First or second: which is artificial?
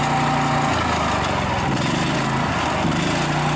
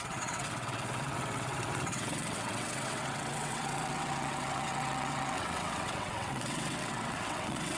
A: second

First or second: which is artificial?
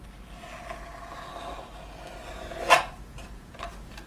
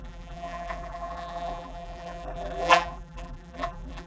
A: second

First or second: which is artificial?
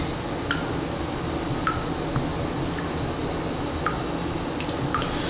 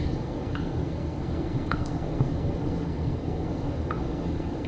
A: second